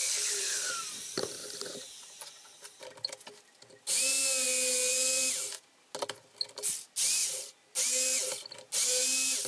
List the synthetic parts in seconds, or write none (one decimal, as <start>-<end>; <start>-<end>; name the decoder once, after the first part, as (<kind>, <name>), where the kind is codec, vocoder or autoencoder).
0.0-0.7 (codec, HILCodec)